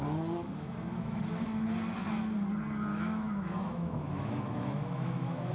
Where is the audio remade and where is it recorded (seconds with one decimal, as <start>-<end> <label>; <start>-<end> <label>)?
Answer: 0.0-0.4 recorded; 0.4-1.2 remade; 1.2-2.9 recorded; 2.9-5.5 remade